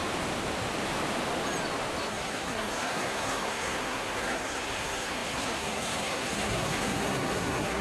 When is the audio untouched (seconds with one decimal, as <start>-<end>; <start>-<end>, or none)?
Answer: 0.0-2.1